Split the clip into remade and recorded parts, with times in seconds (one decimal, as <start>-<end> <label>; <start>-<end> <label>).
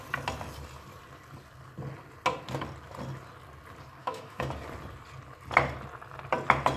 0.0-4.0 recorded; 4.0-4.5 remade; 4.5-6.8 recorded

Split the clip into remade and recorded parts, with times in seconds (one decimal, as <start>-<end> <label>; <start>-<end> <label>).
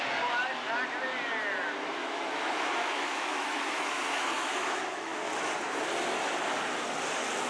0.0-2.0 recorded; 2.0-3.9 remade; 3.9-4.4 recorded; 4.4-5.2 remade; 5.2-7.5 recorded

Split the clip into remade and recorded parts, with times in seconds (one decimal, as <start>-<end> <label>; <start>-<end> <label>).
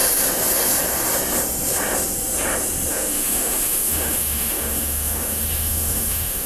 0.0-2.9 recorded; 2.9-6.5 remade